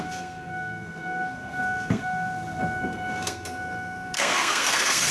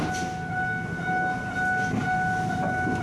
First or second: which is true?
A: second